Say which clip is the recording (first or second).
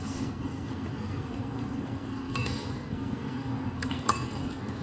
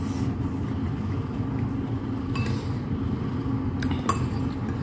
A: second